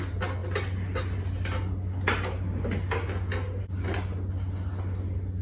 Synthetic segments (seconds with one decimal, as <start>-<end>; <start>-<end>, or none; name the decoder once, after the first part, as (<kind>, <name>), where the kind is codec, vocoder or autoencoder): none